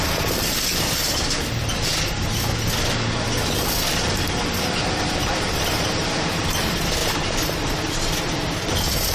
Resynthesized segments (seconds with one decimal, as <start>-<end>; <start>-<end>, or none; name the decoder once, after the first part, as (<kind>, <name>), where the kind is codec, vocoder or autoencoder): 0.0-1.9 (vocoder, BigVGAN v2); 3.9-7.0; 8.2-9.1